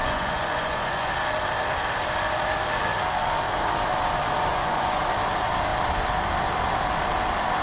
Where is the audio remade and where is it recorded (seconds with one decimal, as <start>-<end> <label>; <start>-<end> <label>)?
0.0-1.1 remade; 1.1-4.5 recorded; 4.5-5.0 remade; 5.0-7.6 recorded